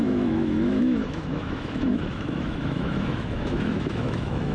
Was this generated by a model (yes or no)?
yes